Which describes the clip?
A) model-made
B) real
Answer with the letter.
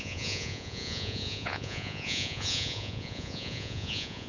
A